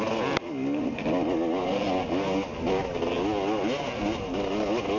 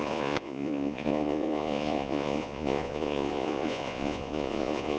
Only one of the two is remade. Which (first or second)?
second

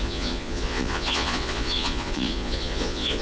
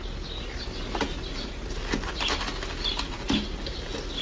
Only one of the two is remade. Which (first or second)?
first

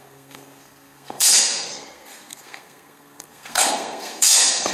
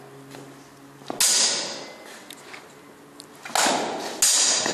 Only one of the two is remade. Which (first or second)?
first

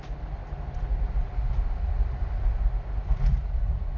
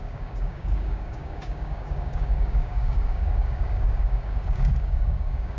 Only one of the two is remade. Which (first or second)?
second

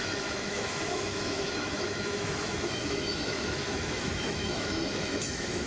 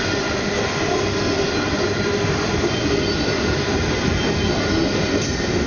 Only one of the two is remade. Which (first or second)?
first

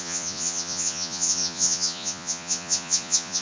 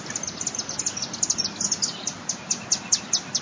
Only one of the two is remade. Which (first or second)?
first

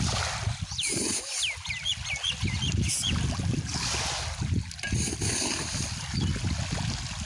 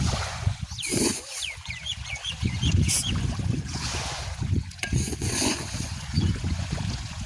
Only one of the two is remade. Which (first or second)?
second